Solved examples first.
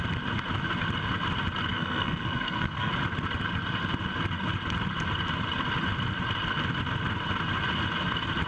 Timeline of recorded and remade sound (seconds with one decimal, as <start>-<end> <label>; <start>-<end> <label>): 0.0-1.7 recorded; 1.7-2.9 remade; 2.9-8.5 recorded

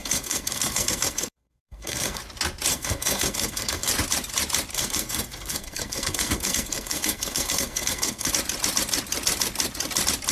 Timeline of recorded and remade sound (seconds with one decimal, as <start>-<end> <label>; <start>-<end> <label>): 0.0-2.2 remade; 2.2-2.7 recorded; 2.7-3.9 remade; 3.9-4.7 recorded; 4.7-8.3 remade; 8.3-10.3 recorded

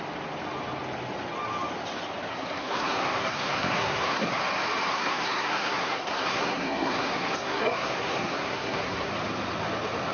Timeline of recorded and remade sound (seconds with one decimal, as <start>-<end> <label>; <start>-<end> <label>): 0.0-2.3 recorded; 2.3-4.4 remade; 4.4-4.9 recorded; 4.9-9.1 remade; 9.1-10.1 recorded

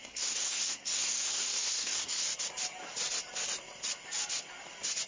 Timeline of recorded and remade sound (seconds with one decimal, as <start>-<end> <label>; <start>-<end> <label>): 0.0-2.2 remade; 2.2-5.1 recorded